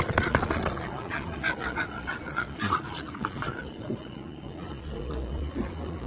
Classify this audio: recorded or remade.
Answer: remade